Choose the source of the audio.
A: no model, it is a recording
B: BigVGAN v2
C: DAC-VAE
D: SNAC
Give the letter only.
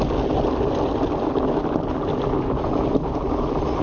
A